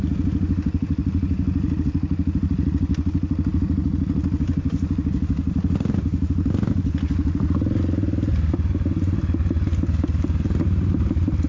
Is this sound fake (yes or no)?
no